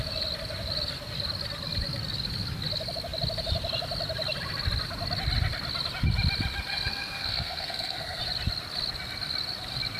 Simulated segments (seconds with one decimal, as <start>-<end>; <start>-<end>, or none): 6.7-8.2